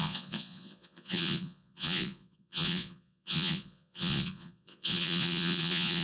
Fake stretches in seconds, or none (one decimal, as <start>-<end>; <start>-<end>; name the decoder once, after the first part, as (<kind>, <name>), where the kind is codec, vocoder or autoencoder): 0.0-6.0 (vocoder, Vocos)